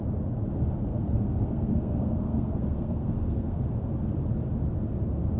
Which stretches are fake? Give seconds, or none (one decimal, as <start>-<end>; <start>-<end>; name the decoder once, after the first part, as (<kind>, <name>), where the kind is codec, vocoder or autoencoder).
0.9-3.6 (codec, SNAC)